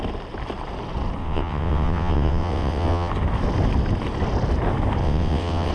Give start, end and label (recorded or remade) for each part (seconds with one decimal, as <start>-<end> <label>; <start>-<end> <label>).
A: 0.0-1.2 recorded; 1.2-3.1 remade; 3.1-5.0 recorded; 5.0-5.7 remade